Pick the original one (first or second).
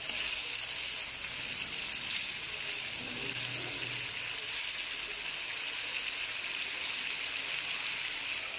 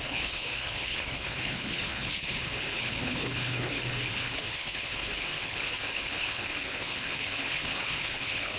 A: first